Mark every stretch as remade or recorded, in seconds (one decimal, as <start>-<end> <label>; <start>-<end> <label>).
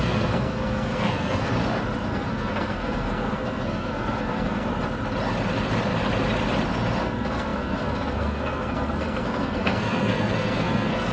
0.0-1.5 remade; 1.5-2.1 recorded; 2.1-4.7 remade; 4.7-7.0 recorded; 7.0-11.1 remade